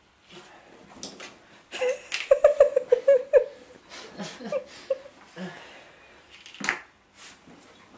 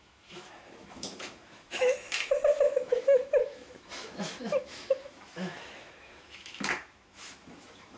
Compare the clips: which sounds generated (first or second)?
second